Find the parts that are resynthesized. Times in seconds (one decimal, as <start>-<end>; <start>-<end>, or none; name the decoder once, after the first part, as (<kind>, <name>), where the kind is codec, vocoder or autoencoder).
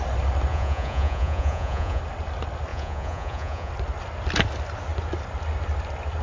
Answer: 0.5-2.0 (vocoder, Vocos); 2.7-3.7